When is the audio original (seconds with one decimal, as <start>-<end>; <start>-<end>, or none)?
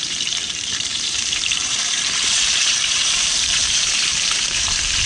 none